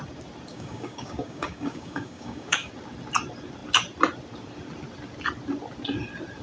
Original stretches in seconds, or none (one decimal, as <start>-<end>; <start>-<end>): 0.0-0.5; 2.7-6.4